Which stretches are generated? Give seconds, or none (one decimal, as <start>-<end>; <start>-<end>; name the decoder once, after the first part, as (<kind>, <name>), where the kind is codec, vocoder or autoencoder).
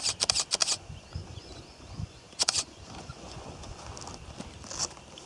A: 0.6-3.8 (vocoder, Vocos)